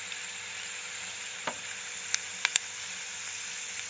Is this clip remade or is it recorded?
remade